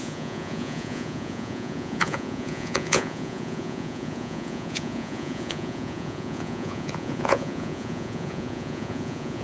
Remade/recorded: remade